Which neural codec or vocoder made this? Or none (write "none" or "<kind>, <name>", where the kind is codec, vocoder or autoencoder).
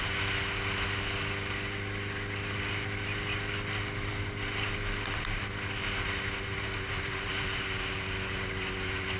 none